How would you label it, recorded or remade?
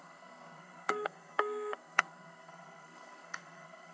remade